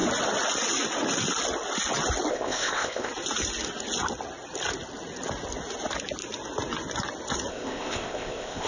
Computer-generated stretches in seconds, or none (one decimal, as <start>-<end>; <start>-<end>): 2.3-3.1; 7.5-8.7